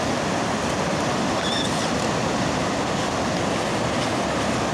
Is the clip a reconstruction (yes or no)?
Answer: no